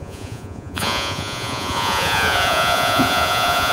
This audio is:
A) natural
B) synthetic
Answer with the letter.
B